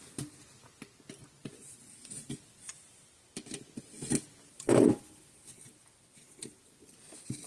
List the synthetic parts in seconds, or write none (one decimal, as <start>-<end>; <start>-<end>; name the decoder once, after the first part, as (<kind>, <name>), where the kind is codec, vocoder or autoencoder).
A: none